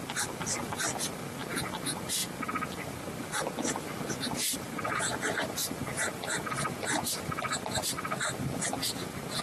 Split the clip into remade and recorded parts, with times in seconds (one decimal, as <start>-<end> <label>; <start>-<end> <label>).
0.0-5.6 recorded; 5.6-6.5 remade; 6.5-9.4 recorded